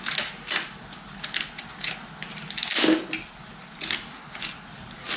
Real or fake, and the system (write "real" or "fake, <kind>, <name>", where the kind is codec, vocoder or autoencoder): real